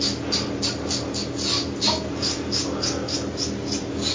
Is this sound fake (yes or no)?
no